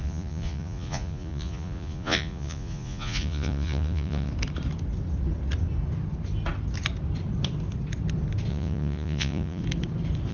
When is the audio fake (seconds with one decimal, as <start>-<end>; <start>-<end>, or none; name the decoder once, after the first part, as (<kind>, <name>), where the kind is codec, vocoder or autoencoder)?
0.0-4.3 (vocoder, Vocos); 8.5-9.6